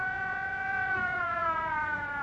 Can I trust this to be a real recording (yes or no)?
no